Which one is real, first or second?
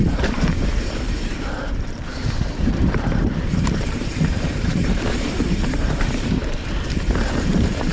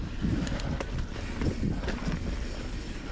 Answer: second